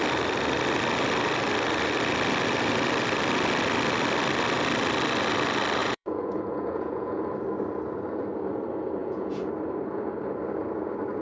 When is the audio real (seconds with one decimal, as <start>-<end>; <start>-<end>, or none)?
0.0-5.8; 7.2-9.0; 9.5-11.2